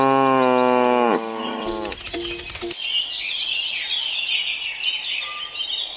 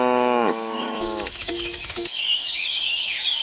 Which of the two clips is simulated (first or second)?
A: second